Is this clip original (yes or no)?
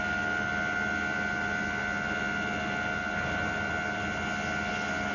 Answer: yes